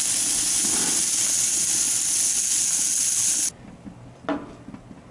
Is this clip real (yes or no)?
yes